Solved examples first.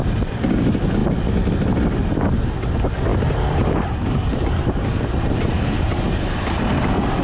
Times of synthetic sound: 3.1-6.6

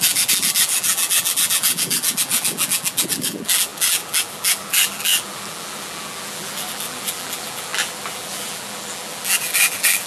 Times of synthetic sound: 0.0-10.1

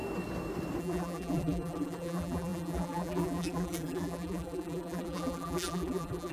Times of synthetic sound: 0.8-6.3